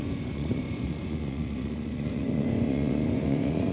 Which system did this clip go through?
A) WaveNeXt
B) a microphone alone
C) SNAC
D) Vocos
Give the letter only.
D